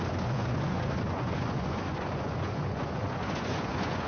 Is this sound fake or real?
fake